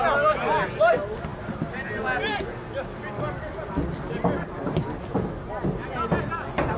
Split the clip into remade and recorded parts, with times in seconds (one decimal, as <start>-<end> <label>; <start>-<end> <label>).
0.0-6.8 recorded

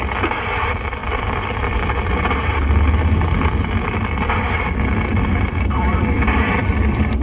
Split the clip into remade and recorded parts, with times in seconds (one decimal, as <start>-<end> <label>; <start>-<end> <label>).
0.0-1.0 recorded; 1.0-2.6 remade; 2.6-7.2 recorded

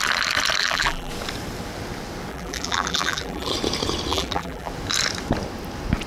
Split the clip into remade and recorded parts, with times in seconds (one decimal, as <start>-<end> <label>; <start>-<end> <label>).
0.0-0.6 recorded; 0.6-1.1 remade; 1.1-2.3 recorded; 2.3-3.5 remade; 3.5-4.1 recorded; 4.1-4.7 remade; 4.7-6.1 recorded

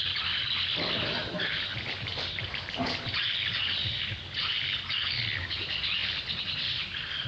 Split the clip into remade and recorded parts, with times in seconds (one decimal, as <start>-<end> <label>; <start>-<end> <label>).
0.0-7.3 recorded

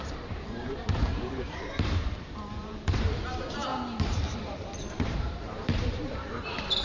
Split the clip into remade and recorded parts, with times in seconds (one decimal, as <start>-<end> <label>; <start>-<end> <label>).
0.0-3.7 remade; 3.7-4.4 recorded; 4.4-6.8 remade

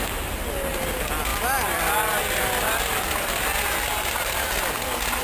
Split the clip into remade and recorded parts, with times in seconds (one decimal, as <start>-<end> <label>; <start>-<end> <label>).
0.0-5.2 recorded